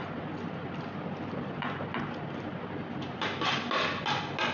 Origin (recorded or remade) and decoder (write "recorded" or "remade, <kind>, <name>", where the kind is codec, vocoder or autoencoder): recorded